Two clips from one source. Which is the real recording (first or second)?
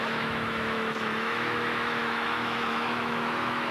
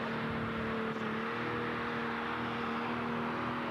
second